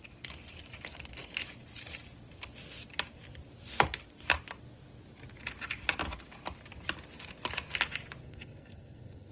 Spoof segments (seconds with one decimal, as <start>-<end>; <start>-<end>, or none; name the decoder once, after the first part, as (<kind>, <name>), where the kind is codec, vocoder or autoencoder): 8.2-9.3 (codec, SNAC)